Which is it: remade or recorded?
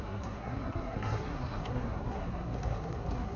remade